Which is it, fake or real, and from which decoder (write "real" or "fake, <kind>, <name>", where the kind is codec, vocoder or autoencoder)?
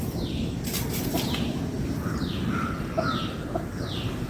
fake, vocoder, BigVGAN v2